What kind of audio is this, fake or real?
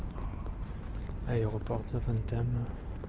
real